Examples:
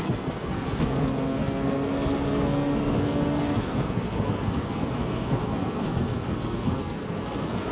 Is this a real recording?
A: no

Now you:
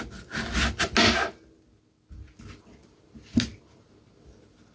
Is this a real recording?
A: yes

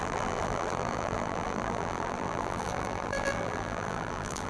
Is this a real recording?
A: no